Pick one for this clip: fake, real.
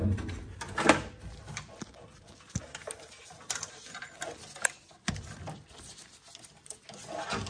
real